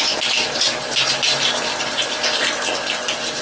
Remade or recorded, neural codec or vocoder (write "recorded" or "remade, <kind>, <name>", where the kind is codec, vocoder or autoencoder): recorded